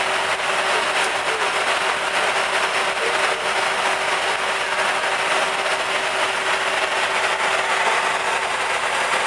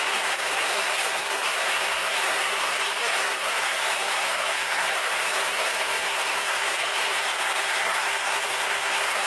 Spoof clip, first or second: second